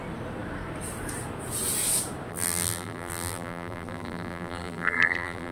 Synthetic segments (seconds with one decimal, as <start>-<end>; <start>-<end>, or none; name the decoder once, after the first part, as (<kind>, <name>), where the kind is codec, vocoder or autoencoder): 2.3-5.5 (vocoder, BigVGAN v2)